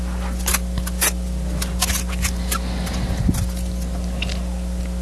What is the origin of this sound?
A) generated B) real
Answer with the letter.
B